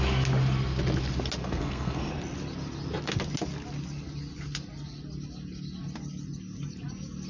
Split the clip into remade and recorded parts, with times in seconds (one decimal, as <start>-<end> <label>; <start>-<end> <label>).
0.0-1.4 recorded; 1.4-2.1 remade; 2.1-7.3 recorded